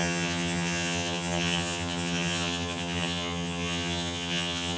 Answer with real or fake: fake